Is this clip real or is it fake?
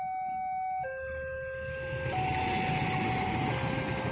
real